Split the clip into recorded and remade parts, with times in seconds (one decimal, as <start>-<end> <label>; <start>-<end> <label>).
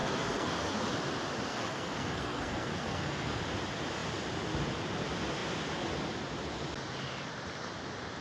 0.0-0.8 remade; 0.8-1.5 recorded; 1.5-3.4 remade; 3.4-8.2 recorded